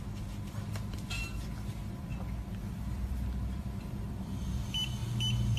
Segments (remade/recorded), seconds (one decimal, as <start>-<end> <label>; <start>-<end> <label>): 0.0-2.1 remade; 2.1-2.7 recorded; 2.7-5.6 remade